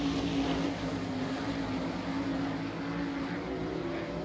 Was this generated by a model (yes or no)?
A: no